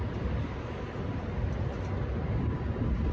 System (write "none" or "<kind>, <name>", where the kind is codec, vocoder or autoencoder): none